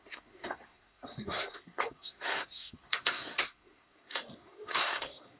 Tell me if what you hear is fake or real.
fake